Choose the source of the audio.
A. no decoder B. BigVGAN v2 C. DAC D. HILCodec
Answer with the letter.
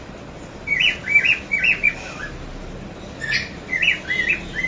A